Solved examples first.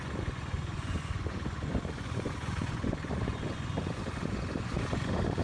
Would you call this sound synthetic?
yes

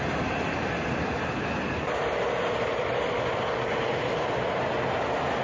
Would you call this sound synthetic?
no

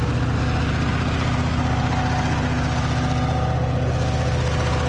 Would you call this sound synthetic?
no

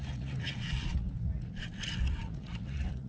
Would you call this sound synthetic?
yes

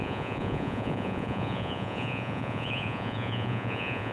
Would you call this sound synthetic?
yes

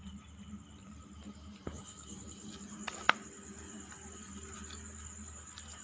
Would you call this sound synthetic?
no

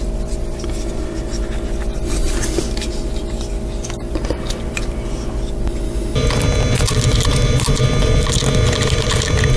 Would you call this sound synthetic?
no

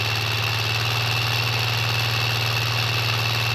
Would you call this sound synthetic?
no